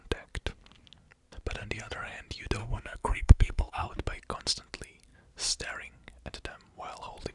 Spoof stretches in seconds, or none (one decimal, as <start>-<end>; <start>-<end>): 2.6-3.9